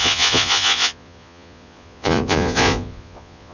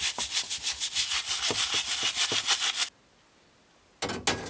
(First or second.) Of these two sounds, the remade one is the first